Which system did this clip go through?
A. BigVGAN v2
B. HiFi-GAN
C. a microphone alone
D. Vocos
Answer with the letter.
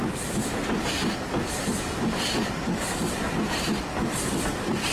C